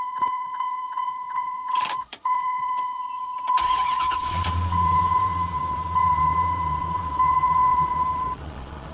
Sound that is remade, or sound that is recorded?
remade